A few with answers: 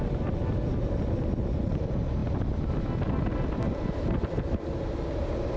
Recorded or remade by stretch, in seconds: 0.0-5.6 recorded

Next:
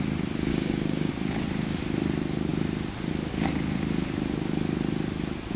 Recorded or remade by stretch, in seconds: 0.0-0.5 recorded; 0.5-1.1 remade; 1.1-5.6 recorded

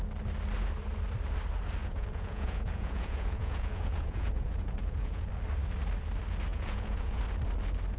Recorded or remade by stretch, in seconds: 0.0-1.8 recorded; 1.8-5.3 remade; 5.3-6.5 recorded; 6.5-7.2 remade; 7.2-8.0 recorded

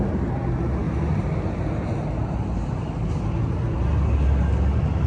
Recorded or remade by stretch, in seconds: 0.0-5.1 recorded

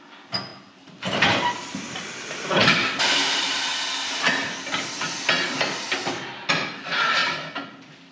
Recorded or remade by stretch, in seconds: 0.0-3.7 remade; 3.7-6.5 recorded; 6.5-8.1 remade

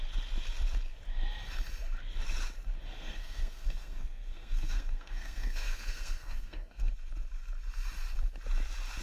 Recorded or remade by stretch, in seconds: 0.0-2.9 recorded; 2.9-6.9 remade; 6.9-9.0 recorded

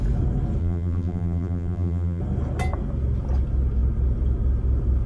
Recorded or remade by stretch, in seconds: 0.0-0.6 recorded; 0.6-2.2 remade; 2.2-5.1 recorded

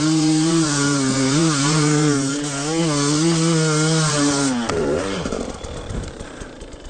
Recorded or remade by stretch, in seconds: 0.0-2.3 remade; 2.3-4.1 recorded; 4.1-6.9 remade